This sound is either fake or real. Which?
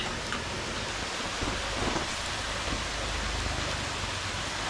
real